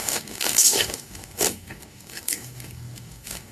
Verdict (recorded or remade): remade